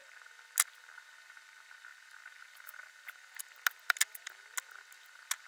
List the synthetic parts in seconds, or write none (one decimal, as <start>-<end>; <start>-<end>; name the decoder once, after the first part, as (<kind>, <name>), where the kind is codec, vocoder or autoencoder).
none